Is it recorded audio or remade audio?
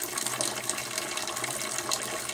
recorded